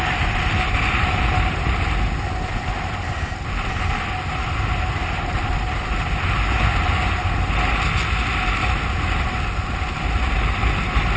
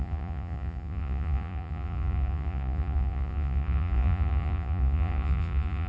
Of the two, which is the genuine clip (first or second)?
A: first